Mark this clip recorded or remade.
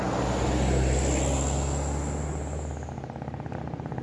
recorded